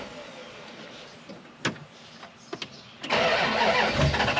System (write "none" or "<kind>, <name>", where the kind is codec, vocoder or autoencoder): none